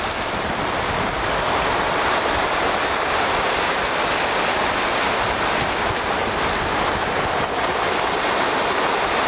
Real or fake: real